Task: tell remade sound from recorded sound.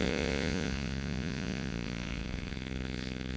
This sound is remade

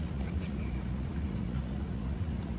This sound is remade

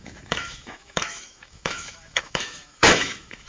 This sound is remade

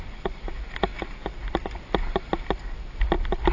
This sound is recorded